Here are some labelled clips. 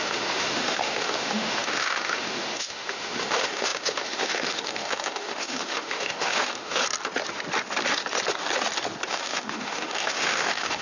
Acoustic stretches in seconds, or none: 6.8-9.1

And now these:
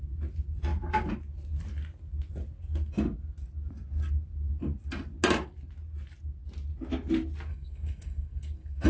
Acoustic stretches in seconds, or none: 0.0-7.5